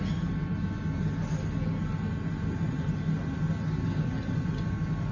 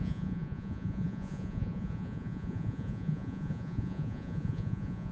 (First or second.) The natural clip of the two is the first